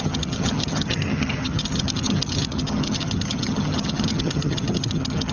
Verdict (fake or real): fake